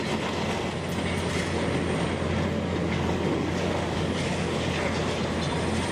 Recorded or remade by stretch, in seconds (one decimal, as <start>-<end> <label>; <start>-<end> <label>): 0.0-2.8 recorded; 2.8-4.9 remade; 4.9-5.9 recorded